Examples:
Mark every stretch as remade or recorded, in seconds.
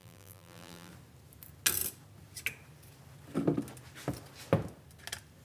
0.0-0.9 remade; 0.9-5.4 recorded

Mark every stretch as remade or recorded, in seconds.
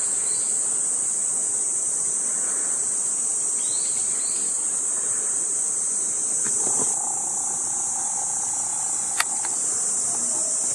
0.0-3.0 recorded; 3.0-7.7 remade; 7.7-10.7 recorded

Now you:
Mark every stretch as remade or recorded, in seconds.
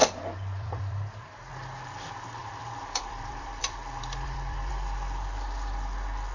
0.0-1.5 remade; 1.5-2.4 recorded; 2.4-4.7 remade; 4.7-6.3 recorded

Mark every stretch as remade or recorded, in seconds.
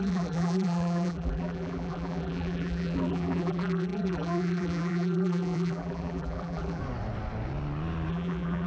0.0-6.8 remade; 6.8-8.1 recorded; 8.1-8.7 remade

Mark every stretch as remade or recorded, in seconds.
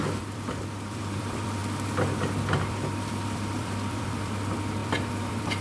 0.0-5.6 remade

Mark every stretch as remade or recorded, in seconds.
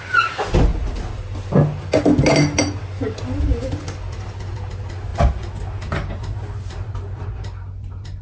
0.0-8.2 recorded